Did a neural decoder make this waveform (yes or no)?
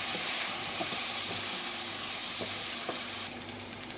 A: yes